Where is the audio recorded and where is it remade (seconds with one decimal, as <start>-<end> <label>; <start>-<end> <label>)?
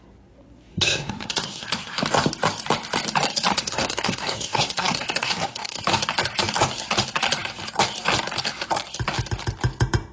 0.0-0.7 recorded; 0.7-2.0 remade; 2.0-3.5 recorded; 3.5-5.8 remade; 5.8-10.1 recorded